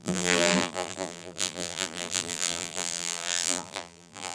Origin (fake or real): fake